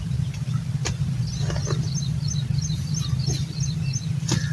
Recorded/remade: recorded